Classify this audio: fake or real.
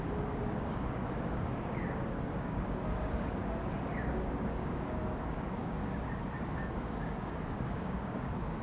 fake